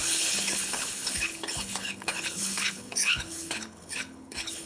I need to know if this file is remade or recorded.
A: remade